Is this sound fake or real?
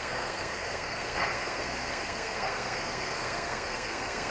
fake